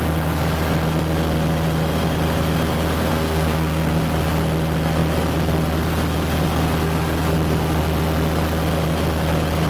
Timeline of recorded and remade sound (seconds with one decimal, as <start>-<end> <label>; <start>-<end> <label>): 0.0-3.1 recorded; 3.1-4.0 remade; 4.0-9.7 recorded